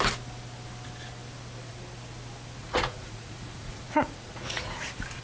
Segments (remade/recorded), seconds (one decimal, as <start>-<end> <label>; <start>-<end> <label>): 0.0-2.6 recorded; 2.6-4.8 remade; 4.8-5.2 recorded